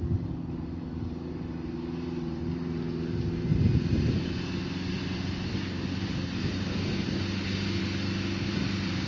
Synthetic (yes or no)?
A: no